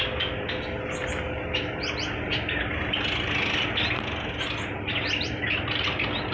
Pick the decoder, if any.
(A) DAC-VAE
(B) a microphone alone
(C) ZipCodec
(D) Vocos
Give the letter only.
B